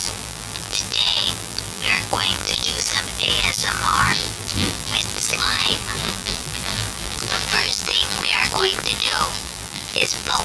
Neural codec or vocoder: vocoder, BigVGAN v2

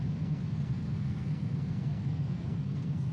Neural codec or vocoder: codec, SNAC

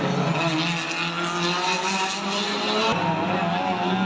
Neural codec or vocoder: none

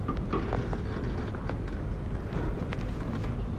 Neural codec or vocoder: none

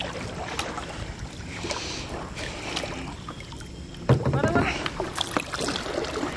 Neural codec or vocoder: none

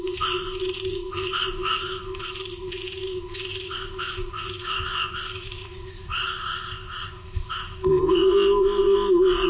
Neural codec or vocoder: codec, ZipCodec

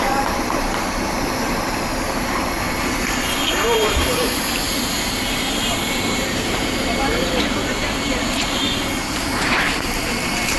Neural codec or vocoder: vocoder, BigVGAN v2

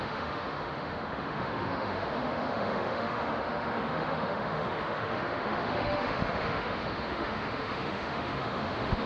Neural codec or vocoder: autoencoder, DAC-VAE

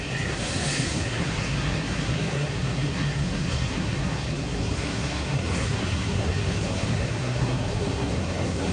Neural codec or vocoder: codec, SNAC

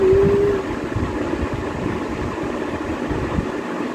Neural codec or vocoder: none